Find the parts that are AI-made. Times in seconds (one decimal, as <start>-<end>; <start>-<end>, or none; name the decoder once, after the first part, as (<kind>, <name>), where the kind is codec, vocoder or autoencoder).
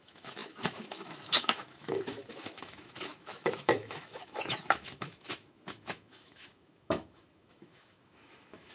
0.0-8.7 (autoencoder, DAC-VAE)